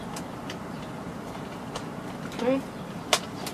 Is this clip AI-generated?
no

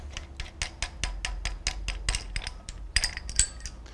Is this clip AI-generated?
no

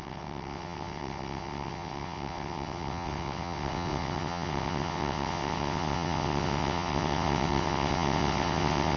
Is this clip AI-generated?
yes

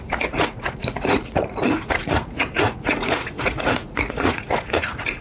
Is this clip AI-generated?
yes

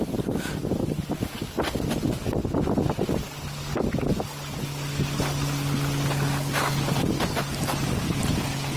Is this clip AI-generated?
no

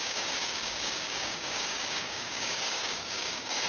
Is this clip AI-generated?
yes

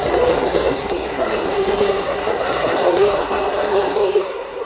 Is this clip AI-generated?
yes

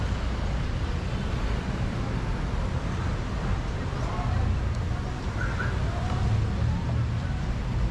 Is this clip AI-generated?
no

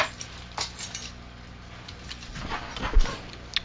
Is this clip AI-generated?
no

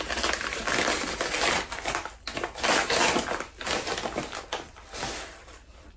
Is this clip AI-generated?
no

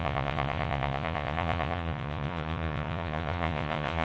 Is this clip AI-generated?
yes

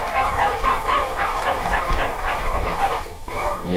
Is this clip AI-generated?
yes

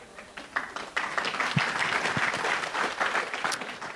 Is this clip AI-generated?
no